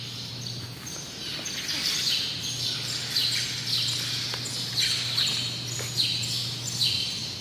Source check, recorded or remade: recorded